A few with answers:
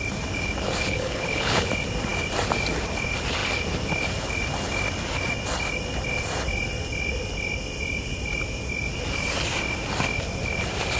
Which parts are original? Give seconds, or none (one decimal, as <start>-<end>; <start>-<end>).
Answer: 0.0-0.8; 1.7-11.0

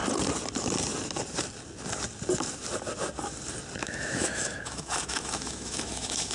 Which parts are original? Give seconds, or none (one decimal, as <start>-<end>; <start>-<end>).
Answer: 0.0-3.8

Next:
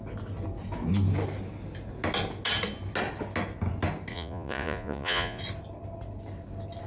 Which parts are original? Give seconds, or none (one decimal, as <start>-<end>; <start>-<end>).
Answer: 0.0-4.1; 5.4-6.9